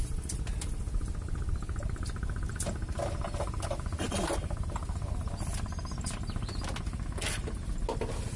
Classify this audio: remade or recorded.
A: recorded